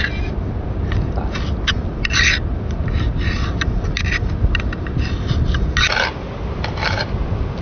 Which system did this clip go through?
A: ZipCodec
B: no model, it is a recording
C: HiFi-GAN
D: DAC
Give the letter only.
B